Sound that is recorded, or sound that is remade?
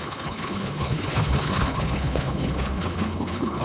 remade